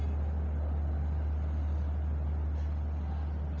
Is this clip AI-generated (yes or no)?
no